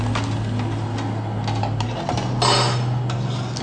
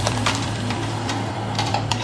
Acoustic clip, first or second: first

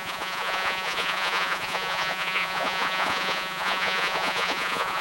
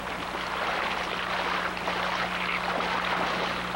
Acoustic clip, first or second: second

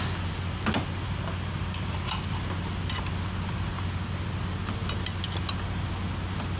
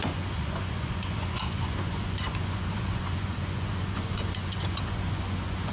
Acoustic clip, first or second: first